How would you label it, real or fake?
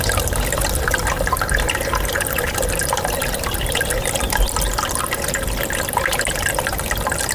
real